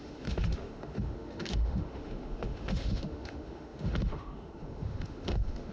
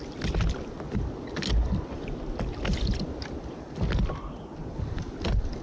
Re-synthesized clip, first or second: first